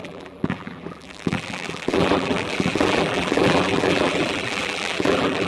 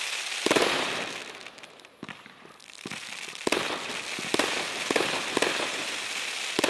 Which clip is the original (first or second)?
second